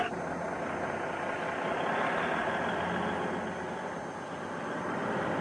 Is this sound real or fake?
real